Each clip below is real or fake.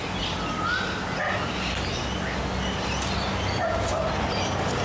real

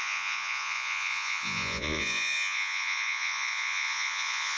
fake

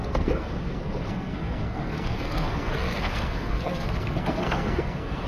fake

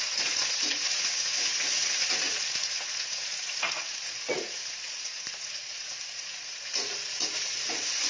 fake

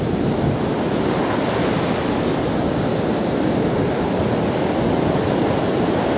real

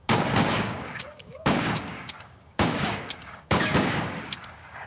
fake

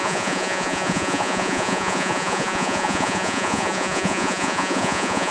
fake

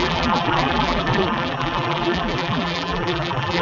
fake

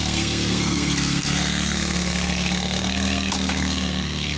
fake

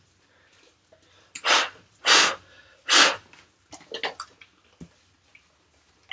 real